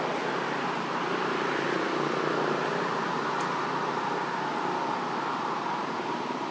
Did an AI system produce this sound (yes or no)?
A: no